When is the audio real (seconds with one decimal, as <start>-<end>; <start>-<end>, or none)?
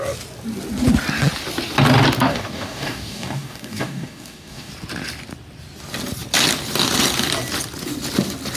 0.0-2.3; 4.7-8.6